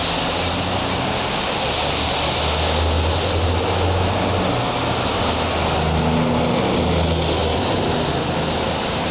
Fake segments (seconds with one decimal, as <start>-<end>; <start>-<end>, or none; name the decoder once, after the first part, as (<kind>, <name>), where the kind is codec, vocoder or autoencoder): none